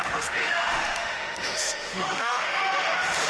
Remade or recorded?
remade